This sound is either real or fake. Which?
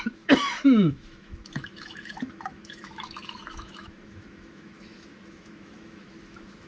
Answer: fake